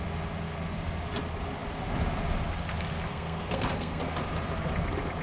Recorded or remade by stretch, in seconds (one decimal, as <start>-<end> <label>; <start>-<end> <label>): 0.0-3.1 recorded; 3.1-4.0 remade; 4.0-5.2 recorded